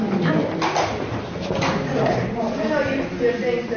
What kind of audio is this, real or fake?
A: real